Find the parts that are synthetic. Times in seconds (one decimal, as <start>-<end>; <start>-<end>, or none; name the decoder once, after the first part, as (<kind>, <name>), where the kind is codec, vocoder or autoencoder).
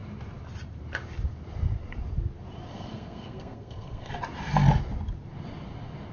2.7-4.1 (codec, SNAC)